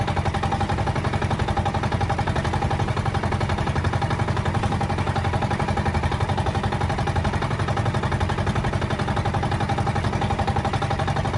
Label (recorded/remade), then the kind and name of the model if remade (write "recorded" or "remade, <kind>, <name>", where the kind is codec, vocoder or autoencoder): recorded